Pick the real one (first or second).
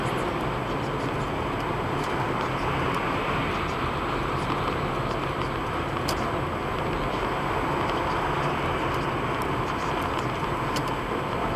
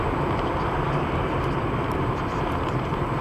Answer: first